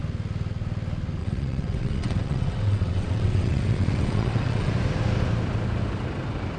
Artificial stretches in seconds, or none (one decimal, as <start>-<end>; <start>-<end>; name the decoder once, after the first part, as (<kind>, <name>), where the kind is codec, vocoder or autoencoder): 1.2-4.7 (vocoder, WaveNeXt)